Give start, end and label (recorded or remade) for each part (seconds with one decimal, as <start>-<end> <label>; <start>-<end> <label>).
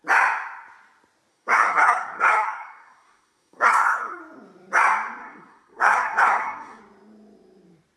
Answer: 0.0-1.3 recorded; 1.3-4.2 remade; 4.2-5.2 recorded; 5.2-6.8 remade; 6.8-8.0 recorded